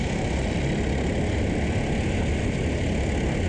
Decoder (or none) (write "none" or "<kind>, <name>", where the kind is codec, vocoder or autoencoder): none